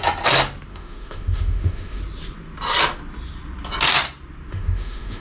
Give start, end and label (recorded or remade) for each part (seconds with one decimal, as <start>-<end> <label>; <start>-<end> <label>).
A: 0.0-0.7 recorded; 0.7-2.0 remade; 2.0-4.5 recorded; 4.5-5.2 remade